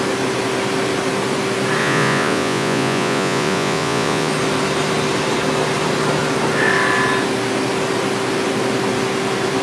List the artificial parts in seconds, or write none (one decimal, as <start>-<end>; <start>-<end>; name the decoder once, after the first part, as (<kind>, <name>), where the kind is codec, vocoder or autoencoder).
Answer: 1.8-4.3 (vocoder, Vocos)